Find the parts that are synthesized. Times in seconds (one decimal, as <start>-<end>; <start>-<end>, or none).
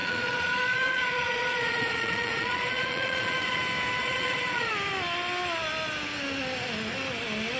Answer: 0.0-3.6; 4.0-4.7